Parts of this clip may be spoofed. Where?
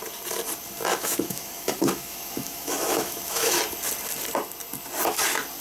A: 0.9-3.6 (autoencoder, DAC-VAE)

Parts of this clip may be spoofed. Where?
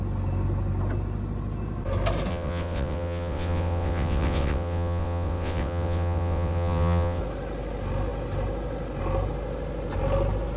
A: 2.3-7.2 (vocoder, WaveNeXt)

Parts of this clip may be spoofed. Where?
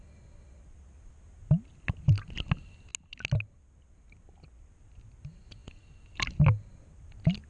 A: none